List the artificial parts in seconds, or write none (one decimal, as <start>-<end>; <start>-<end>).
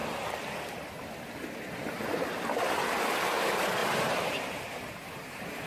3.8-5.7